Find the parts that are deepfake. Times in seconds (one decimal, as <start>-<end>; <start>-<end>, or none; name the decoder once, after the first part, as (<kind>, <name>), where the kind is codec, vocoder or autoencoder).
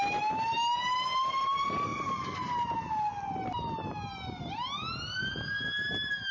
none